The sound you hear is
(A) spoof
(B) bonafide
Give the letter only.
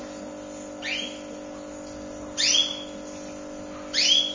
B